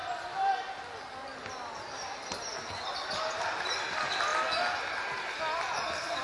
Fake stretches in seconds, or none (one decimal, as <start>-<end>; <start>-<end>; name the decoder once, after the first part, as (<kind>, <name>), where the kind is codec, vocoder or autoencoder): none